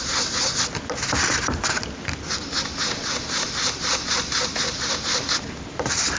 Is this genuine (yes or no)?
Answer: yes